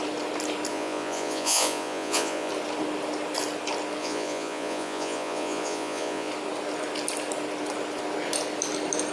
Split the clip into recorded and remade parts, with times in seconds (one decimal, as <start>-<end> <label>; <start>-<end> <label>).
0.0-0.7 recorded; 0.7-2.5 remade; 2.5-4.0 recorded; 4.0-6.3 remade; 6.3-9.1 recorded